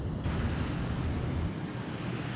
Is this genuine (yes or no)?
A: yes